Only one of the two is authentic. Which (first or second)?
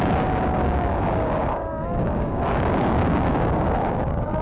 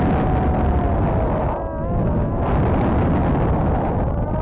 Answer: second